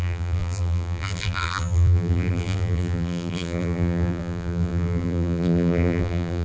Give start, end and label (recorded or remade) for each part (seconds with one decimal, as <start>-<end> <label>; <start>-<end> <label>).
0.0-6.4 remade